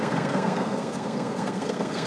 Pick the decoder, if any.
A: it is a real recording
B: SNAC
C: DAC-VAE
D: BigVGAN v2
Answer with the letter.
B